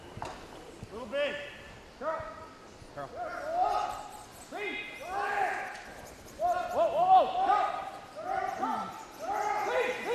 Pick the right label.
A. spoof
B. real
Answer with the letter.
B